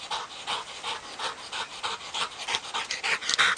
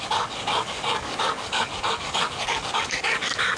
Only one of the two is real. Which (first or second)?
first